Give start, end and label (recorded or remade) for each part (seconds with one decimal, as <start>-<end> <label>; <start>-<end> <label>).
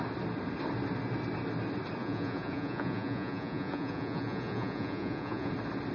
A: 0.0-2.0 recorded; 2.0-5.5 remade; 5.5-5.9 recorded